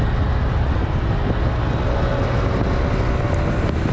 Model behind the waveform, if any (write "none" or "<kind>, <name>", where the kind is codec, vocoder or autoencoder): none